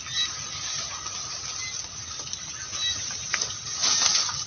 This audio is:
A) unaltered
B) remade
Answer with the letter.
A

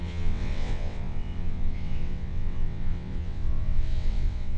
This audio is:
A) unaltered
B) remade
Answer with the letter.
B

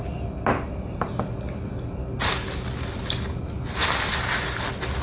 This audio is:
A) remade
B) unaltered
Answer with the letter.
B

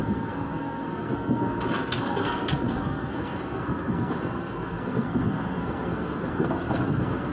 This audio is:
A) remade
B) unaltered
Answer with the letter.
A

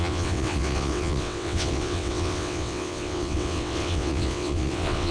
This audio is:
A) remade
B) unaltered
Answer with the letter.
A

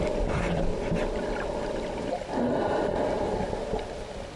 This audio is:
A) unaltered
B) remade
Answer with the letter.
A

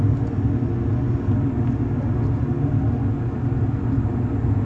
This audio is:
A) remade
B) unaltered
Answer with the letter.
B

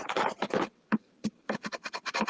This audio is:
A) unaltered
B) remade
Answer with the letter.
B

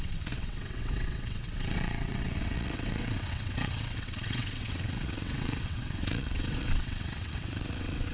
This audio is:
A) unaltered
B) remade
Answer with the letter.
B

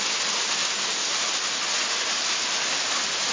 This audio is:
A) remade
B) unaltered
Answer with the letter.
B